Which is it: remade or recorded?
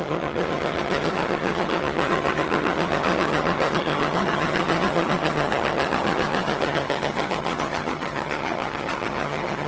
remade